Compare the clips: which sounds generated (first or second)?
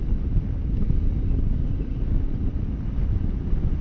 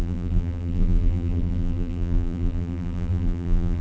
second